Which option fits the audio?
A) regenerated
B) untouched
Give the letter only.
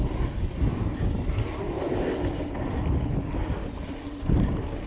B